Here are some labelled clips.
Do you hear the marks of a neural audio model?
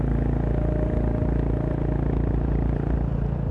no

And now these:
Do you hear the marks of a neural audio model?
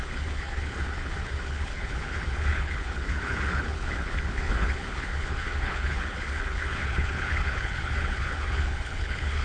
yes